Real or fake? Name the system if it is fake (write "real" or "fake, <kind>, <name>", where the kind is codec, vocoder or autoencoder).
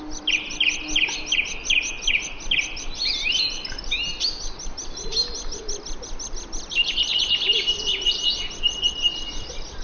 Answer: real